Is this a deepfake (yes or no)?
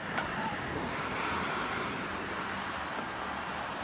yes